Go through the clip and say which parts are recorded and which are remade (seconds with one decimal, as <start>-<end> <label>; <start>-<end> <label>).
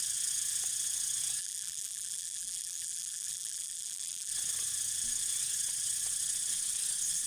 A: 0.0-1.4 recorded; 1.4-4.3 remade; 4.3-7.3 recorded